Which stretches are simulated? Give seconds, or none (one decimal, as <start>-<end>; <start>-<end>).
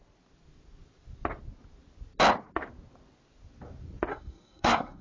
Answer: 4.1-5.0